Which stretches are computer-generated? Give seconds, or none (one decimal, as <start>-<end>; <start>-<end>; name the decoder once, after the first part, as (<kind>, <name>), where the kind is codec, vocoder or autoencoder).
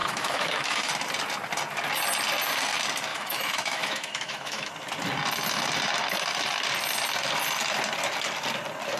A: 0.0-0.9 (autoencoder, DAC-VAE); 3.1-4.7